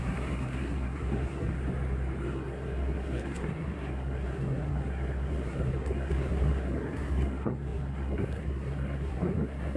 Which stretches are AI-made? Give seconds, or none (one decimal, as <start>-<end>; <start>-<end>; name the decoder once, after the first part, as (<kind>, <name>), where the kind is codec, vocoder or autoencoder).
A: 0.0-1.6 (codec, SNAC); 2.2-9.8